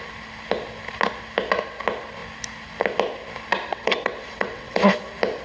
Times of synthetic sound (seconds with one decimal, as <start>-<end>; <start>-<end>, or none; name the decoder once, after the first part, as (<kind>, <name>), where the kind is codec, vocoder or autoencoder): 3.7-5.0 (vocoder, WaveNeXt)